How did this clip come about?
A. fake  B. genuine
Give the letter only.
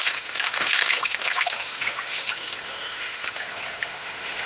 A